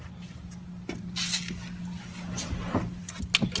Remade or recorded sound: recorded